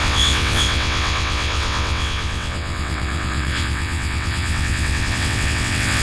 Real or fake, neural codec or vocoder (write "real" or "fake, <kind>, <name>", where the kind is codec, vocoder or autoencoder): fake, vocoder, WaveNeXt